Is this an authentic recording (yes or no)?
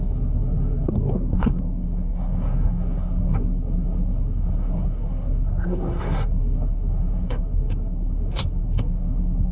no